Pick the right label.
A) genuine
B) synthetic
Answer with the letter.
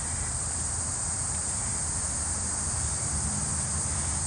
A